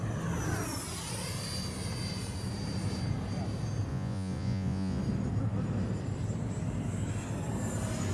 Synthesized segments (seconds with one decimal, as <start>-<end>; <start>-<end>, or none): 3.9-5.0